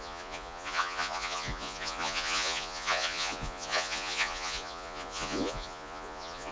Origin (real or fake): fake